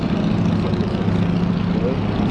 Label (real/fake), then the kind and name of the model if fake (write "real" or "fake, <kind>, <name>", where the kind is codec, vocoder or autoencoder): real